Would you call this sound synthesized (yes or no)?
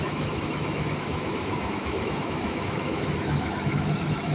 yes